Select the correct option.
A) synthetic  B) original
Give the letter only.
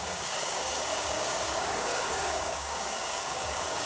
A